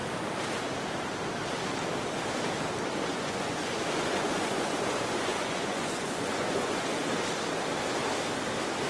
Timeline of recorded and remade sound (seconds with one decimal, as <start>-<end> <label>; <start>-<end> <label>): 0.0-3.1 recorded; 3.1-7.0 remade; 7.0-8.9 recorded